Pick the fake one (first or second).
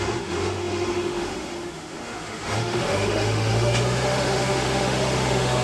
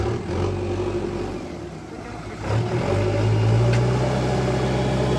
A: first